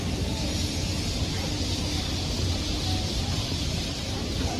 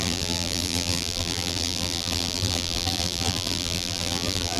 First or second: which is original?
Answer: first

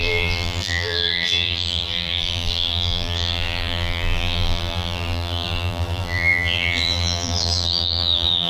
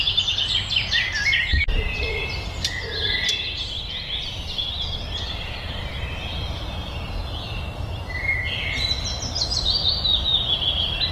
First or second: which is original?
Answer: second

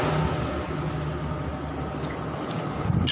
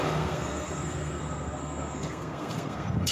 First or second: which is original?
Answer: first